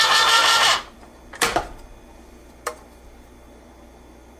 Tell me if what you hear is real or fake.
fake